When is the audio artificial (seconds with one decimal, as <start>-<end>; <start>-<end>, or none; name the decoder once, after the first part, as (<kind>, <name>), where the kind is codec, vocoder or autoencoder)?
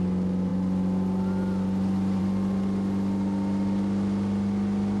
none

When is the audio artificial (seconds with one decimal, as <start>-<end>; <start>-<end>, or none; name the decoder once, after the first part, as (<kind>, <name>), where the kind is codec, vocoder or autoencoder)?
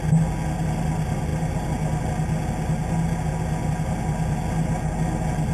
none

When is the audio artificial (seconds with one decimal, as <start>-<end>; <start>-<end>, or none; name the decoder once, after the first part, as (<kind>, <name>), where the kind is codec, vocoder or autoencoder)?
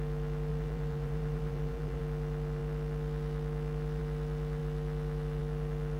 0.5-2.0 (vocoder, BigVGAN v2)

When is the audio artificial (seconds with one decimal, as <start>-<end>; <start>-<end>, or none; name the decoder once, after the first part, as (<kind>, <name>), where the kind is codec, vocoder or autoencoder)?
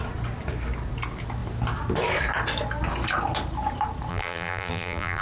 4.1-5.2 (vocoder, BigVGAN v2)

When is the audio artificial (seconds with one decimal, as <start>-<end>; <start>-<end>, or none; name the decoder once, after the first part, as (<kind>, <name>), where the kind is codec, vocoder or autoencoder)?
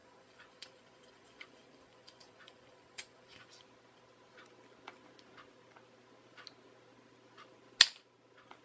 0.0-3.5 (vocoder, Vocos)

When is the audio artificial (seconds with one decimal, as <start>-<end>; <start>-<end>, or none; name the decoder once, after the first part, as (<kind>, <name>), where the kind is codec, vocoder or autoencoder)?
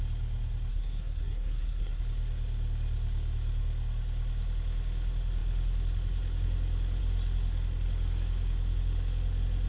0.7-2.0 (codec, SNAC)